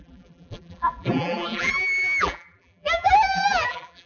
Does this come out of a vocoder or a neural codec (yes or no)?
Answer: yes